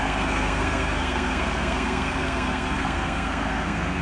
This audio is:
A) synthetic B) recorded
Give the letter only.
A